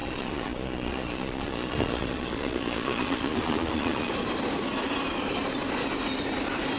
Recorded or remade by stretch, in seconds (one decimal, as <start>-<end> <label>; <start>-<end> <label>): 0.0-4.1 remade; 4.1-6.8 recorded